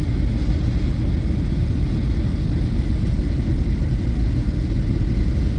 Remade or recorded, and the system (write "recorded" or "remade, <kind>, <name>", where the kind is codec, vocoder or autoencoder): recorded